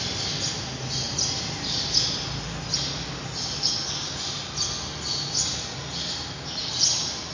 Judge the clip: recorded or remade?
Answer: recorded